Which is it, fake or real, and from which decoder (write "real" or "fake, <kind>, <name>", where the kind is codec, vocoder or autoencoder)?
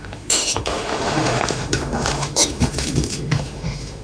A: fake, autoencoder, DAC-VAE